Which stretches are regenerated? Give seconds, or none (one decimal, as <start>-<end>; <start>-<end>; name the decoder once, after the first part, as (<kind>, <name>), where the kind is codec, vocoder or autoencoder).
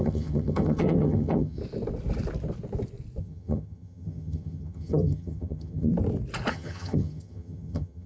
0.0-1.6 (vocoder, HiFi-GAN); 3.2-5.9; 6.5-8.1